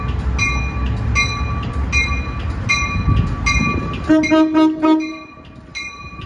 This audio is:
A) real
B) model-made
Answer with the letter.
A